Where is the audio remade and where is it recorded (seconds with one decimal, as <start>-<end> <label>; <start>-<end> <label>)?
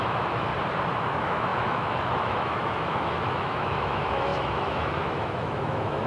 0.0-0.5 remade; 0.5-1.0 recorded; 1.0-6.1 remade